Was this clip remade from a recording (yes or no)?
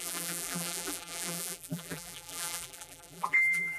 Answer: yes